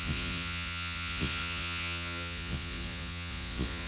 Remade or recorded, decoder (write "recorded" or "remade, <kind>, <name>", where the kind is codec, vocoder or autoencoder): remade, vocoder, Vocos